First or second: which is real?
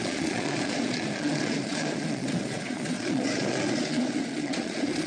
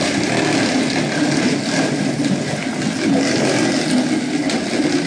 second